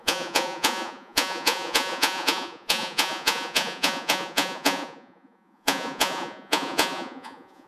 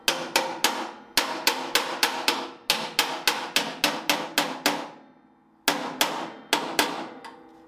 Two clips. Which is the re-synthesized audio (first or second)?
first